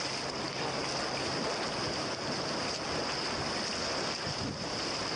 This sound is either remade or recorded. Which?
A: recorded